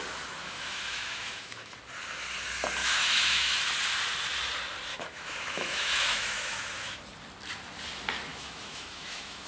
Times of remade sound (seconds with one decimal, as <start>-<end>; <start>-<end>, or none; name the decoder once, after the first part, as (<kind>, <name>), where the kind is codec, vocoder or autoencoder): 0.4-1.7 (autoencoder, DAC-VAE); 2.8-3.6; 4.9-7.0; 8.3-9.5